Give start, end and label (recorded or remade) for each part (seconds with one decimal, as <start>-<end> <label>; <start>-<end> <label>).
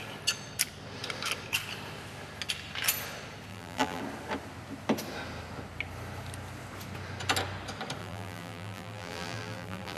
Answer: 0.0-3.5 recorded; 3.5-4.0 remade; 4.0-8.0 recorded; 8.0-10.0 remade